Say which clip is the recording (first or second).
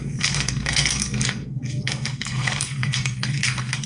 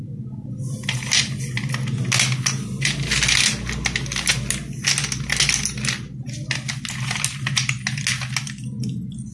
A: second